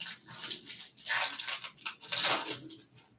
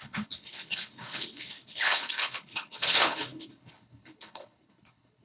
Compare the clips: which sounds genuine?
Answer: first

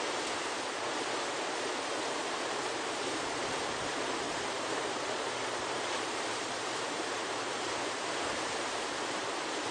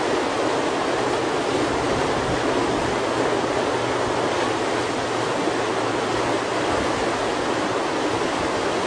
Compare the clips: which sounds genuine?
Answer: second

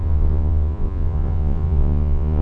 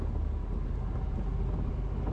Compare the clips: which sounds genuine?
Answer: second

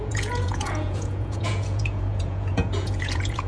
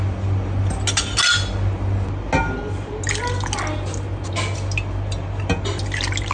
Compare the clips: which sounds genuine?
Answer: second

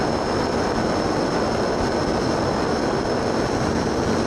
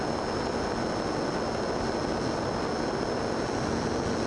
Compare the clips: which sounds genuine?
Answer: second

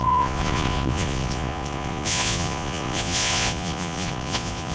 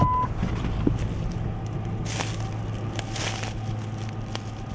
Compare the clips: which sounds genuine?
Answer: second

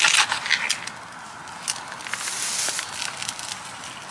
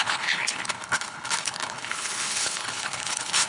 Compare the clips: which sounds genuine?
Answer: first